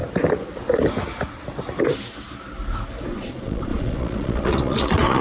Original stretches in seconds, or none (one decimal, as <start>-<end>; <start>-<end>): 0.0-3.1